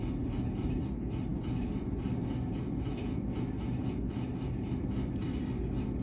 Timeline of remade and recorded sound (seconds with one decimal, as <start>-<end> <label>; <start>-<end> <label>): 0.0-6.0 recorded